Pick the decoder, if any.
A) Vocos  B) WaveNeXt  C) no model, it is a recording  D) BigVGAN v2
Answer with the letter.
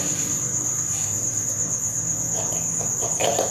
C